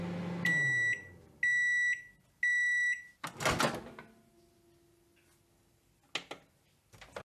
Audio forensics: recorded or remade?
recorded